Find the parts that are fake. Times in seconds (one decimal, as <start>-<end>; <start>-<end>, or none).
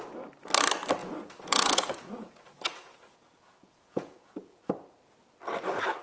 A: 1.0-4.6